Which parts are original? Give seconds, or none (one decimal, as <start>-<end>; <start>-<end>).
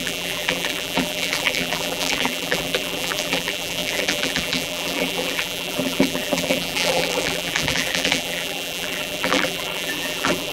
none